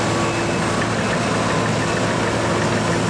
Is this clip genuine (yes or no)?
yes